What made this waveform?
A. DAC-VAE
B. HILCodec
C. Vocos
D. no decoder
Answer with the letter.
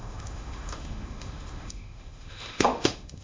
A